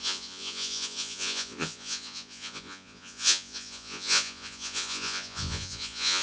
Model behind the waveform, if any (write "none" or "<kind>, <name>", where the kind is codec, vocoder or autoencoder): vocoder, Vocos